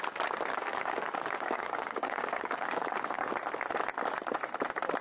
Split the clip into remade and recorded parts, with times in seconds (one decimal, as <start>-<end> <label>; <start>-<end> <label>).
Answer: 0.0-0.5 recorded; 0.5-3.3 remade; 3.3-5.0 recorded